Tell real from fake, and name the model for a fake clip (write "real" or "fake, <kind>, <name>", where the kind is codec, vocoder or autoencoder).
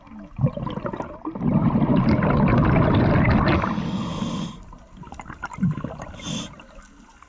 real